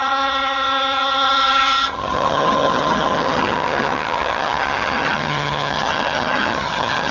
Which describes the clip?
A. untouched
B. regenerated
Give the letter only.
B